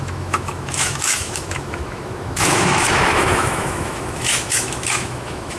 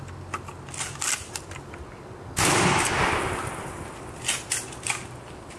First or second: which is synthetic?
first